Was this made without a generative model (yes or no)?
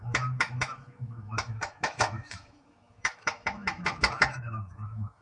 no